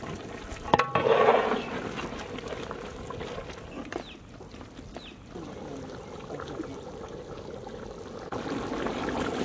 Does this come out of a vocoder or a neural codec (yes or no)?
no